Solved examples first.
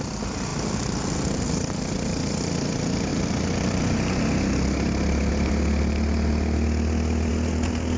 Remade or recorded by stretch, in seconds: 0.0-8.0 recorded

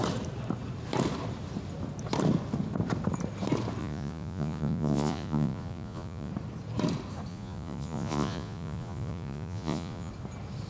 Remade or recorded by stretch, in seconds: 0.0-3.8 recorded; 3.8-6.3 remade; 6.3-7.3 recorded; 7.3-10.1 remade; 10.1-10.7 recorded

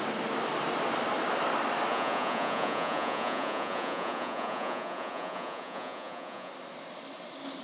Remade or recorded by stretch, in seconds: 0.0-1.9 recorded; 1.9-6.5 remade; 6.5-7.6 recorded

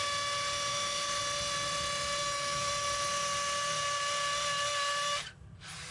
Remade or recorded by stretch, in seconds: 0.0-0.7 recorded; 0.7-1.2 remade; 1.2-2.2 recorded; 2.2-2.7 remade; 2.7-5.9 recorded

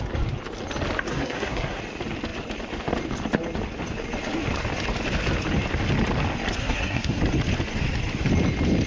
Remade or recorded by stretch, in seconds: 0.0-1.1 recorded; 1.1-1.8 remade; 1.8-6.6 recorded; 6.6-7.2 remade; 7.2-8.9 recorded

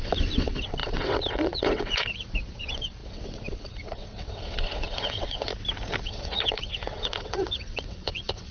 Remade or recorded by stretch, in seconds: 0.0-5.5 remade; 5.5-6.0 recorded; 6.0-8.5 remade

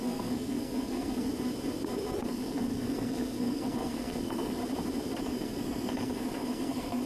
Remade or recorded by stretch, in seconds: 0.0-1.3 remade; 1.3-2.2 recorded; 2.2-4.6 remade; 4.6-5.2 recorded; 5.2-7.1 remade

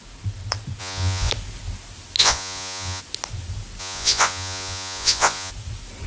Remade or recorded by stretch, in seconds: 0.0-0.8 recorded; 0.8-1.3 remade; 1.3-2.2 recorded; 2.2-3.0 remade; 3.0-3.8 recorded; 3.8-5.5 remade; 5.5-6.1 recorded